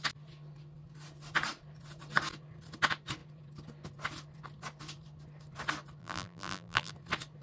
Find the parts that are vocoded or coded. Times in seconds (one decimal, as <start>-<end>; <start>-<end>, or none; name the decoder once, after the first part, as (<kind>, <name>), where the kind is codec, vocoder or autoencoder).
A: 6.0-6.9 (vocoder, BigVGAN v2)